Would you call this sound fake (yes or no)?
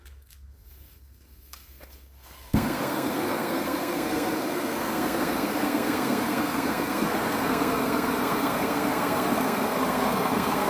yes